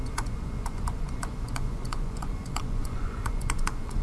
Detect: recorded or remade remade